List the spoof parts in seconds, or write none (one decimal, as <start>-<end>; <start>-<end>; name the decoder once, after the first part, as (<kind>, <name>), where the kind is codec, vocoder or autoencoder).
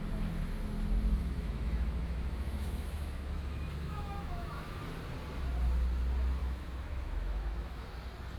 1.2-4.8 (autoencoder, DAC-VAE); 6.4-7.9